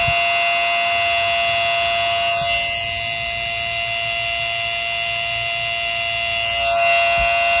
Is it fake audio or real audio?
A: real